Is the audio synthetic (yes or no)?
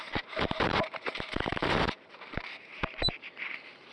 yes